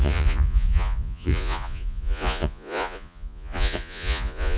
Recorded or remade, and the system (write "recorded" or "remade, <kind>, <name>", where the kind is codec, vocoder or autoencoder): remade, vocoder, Vocos